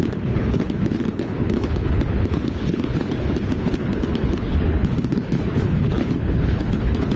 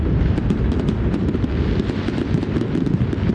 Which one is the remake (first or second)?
first